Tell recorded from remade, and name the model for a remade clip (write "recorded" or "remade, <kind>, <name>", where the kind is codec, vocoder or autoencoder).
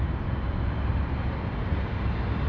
remade, vocoder, BigVGAN v2